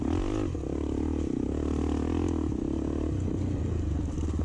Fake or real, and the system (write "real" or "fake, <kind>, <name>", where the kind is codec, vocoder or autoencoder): real